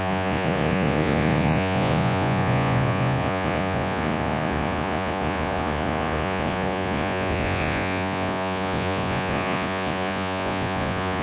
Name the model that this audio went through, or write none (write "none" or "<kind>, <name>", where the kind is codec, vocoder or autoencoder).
vocoder, Vocos